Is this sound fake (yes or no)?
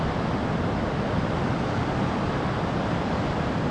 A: no